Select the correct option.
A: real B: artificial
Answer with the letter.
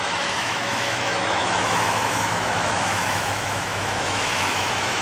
B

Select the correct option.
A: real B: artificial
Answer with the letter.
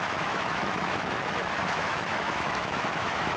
B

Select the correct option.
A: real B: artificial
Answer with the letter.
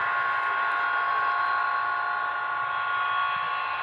A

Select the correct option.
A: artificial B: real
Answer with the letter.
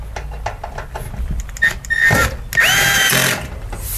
B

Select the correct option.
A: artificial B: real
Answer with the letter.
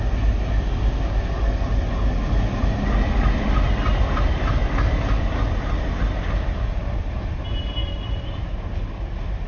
B